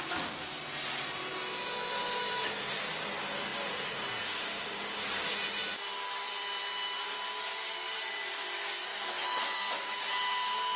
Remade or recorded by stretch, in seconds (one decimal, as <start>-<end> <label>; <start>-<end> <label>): 0.0-8.9 recorded; 8.9-9.6 remade; 9.6-10.8 recorded